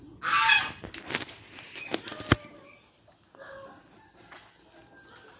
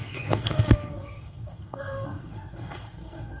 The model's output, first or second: second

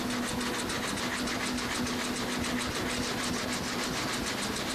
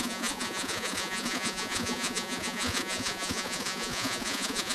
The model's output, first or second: second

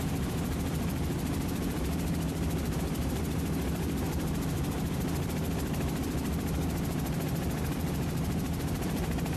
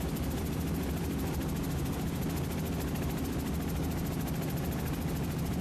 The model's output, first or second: first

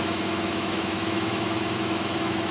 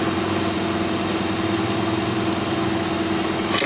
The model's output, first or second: first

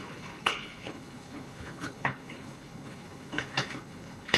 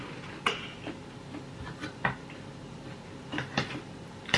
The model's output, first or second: first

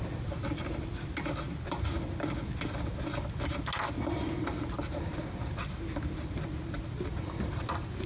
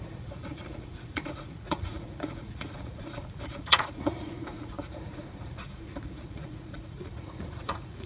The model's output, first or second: second